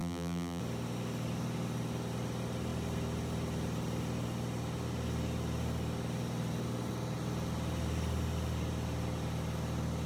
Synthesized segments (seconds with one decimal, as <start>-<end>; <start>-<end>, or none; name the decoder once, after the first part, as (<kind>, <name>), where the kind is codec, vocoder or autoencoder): 0.0-0.6 (vocoder, BigVGAN v2)